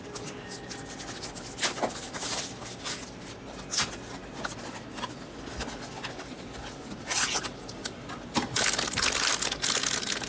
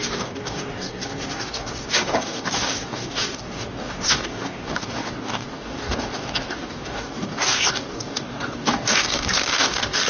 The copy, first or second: second